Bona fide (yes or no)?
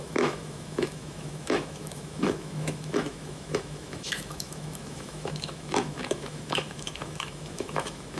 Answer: no